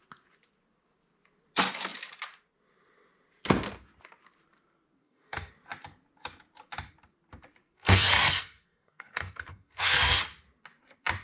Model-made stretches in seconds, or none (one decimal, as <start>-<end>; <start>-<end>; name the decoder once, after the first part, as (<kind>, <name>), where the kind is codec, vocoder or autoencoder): 5.0-5.5 (codec, SNAC); 7.6-10.2

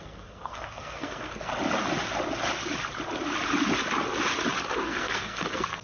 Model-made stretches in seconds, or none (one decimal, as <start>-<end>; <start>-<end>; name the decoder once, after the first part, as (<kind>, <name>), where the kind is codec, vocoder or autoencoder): 0.0-1.5 (codec, SNAC); 4.8-5.8